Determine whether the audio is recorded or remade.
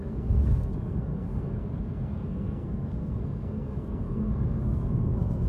remade